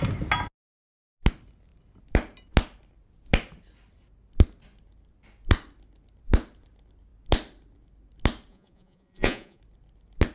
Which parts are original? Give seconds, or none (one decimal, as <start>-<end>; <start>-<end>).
0.0-8.5; 9.6-10.3